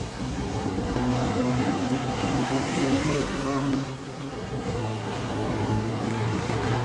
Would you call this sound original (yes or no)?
no